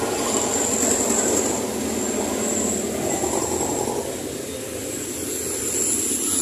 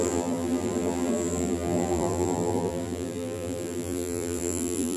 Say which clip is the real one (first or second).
first